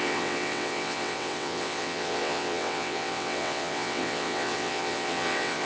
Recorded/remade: remade